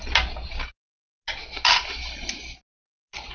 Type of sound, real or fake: real